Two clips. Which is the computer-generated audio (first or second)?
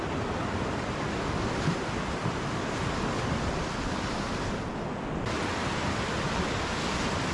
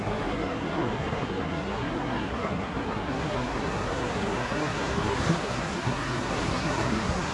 second